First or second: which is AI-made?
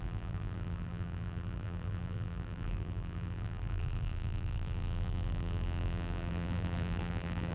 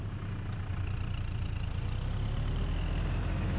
first